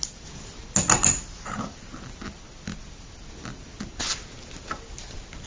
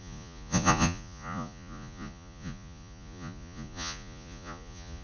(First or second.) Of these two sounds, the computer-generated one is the second